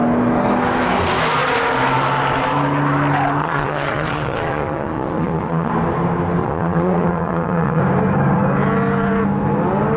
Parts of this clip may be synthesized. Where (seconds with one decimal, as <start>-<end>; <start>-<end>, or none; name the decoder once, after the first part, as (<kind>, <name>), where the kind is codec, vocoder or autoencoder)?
3.4-5.7 (vocoder, Vocos); 6.4-7.8